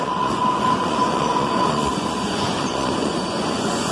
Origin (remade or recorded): remade